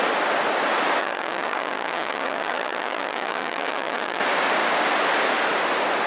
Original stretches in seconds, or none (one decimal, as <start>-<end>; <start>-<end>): 0.0-1.0; 4.2-6.1